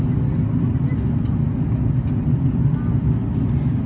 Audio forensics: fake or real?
real